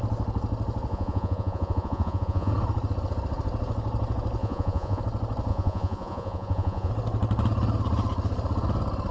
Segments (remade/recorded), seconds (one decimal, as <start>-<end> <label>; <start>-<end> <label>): 0.0-0.9 recorded; 0.9-2.5 remade; 2.5-4.4 recorded; 4.4-5.0 remade; 5.0-5.5 recorded; 5.5-6.9 remade; 6.9-9.1 recorded

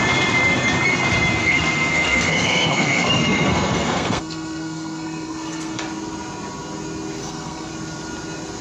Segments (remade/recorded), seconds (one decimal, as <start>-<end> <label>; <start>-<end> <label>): 0.0-1.4 recorded; 1.4-5.8 remade; 5.8-7.2 recorded; 7.2-7.7 remade; 7.7-8.6 recorded

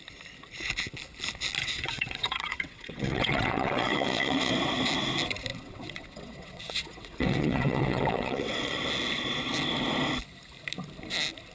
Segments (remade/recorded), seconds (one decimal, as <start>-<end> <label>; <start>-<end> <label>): 0.0-1.6 recorded; 1.6-4.5 remade; 4.5-5.5 recorded; 5.5-8.8 remade; 8.8-11.5 recorded